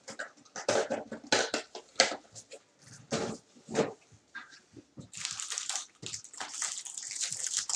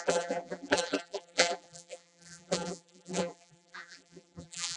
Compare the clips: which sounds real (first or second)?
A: first